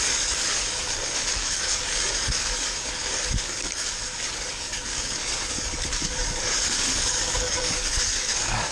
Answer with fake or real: fake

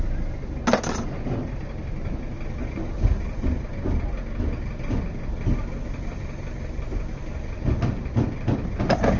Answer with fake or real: real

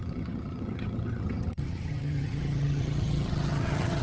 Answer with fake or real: fake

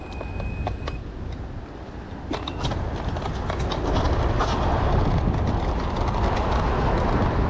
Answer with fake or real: real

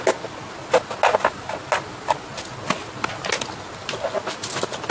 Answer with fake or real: real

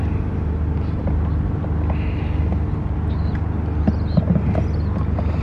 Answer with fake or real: real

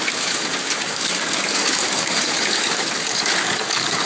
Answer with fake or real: fake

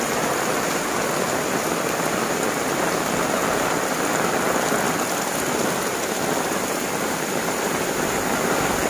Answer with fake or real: real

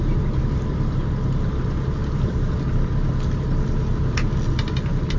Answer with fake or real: real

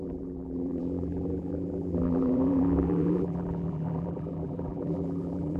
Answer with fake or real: fake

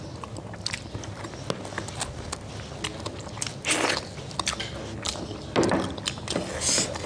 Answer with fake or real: real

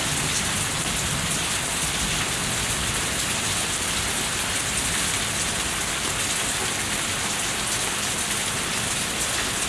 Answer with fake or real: real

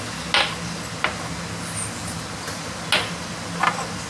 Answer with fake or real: real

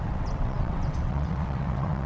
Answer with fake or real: fake